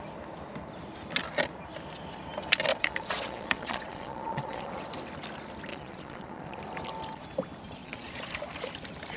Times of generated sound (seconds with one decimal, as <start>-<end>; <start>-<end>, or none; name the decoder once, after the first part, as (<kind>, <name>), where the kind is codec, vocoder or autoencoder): 2.7-4.8 (vocoder, Vocos); 5.7-6.6; 7.8-8.3